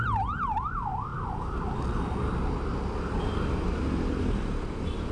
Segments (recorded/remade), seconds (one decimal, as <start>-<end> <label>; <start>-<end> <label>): 0.0-1.1 remade; 1.1-4.2 recorded; 4.2-5.1 remade